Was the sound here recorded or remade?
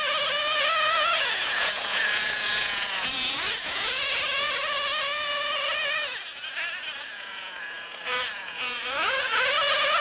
remade